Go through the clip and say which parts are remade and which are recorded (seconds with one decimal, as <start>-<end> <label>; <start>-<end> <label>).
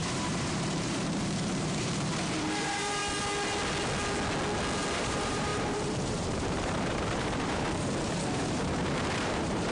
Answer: 0.0-3.0 remade; 3.0-4.9 recorded; 4.9-9.7 remade